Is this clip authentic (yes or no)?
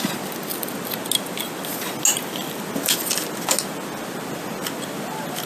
yes